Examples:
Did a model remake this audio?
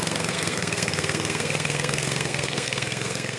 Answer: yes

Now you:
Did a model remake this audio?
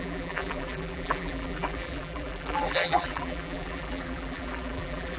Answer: yes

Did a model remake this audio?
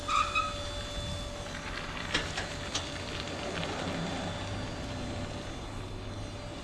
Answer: no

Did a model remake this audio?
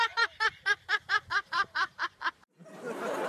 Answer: yes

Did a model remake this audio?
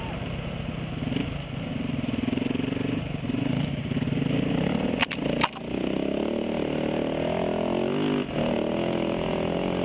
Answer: no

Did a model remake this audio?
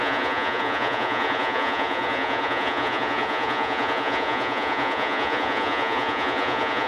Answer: yes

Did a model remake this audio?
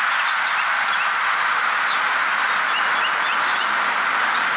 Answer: no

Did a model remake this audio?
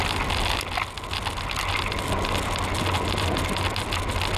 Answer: no